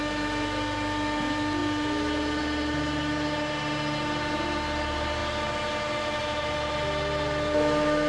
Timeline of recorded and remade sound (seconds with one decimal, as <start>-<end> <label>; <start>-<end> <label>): 0.0-8.1 recorded